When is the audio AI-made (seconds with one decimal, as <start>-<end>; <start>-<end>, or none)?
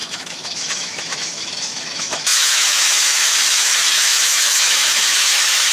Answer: 0.0-5.7